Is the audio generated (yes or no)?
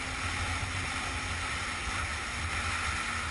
no